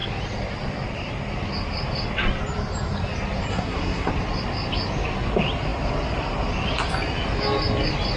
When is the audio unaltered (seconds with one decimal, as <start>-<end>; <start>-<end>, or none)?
0.0-3.5; 4.1-8.2